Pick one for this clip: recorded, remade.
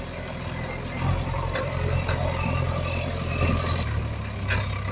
recorded